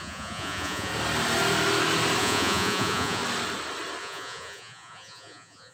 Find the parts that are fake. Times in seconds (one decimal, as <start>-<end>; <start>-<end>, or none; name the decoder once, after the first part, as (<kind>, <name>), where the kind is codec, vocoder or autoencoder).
0.0-0.9 (vocoder, Vocos); 2.2-3.2; 4.0-5.7